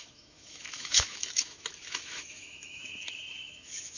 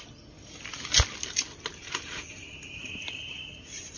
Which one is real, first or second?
second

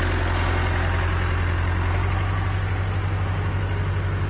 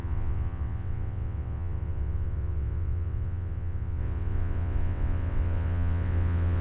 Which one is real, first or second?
first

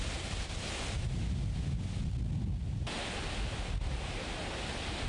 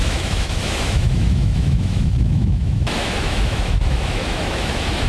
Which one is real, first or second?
first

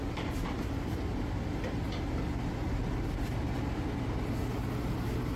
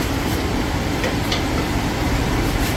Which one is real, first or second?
first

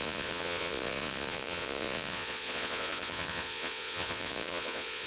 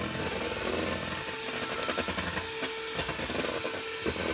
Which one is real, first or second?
second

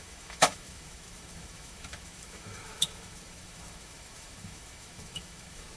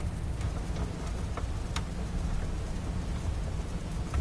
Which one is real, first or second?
second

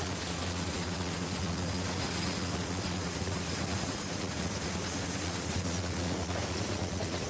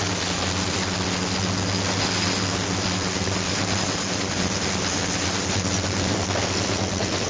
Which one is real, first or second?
second